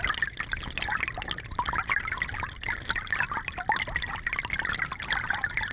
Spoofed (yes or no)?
no